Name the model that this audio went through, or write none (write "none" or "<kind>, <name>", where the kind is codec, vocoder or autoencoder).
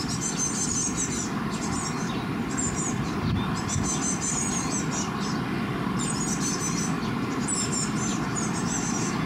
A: none